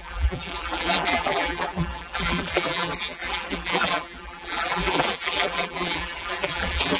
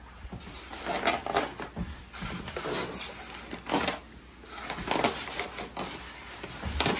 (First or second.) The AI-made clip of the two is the first